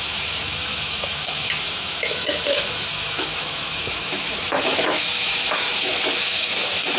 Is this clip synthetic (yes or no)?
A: yes